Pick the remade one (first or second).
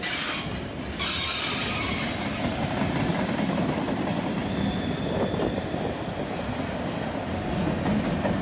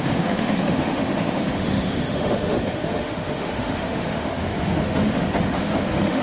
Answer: second